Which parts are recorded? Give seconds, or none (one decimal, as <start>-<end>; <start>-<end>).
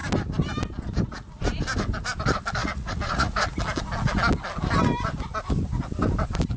0.0-2.6; 3.6-6.6